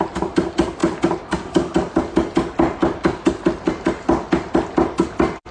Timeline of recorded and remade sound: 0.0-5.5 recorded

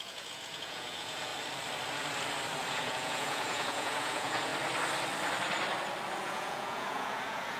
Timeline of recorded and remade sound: 0.0-1.3 remade; 1.3-2.7 recorded; 2.7-4.5 remade; 4.5-6.2 recorded; 6.2-7.6 remade

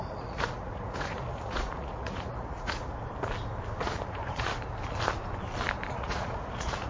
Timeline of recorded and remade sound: 0.0-2.9 remade; 2.9-3.8 recorded; 3.8-4.5 remade; 4.5-5.9 recorded; 5.9-6.9 remade

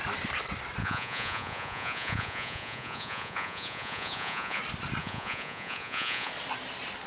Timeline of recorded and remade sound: 0.0-0.8 recorded; 0.8-4.6 remade; 4.6-5.0 recorded; 5.0-6.3 remade; 6.3-7.1 recorded

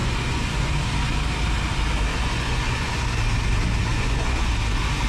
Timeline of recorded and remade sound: 0.0-0.7 remade; 0.7-2.1 recorded; 2.1-3.2 remade; 3.2-3.9 recorded; 3.9-4.5 remade; 4.5-5.1 recorded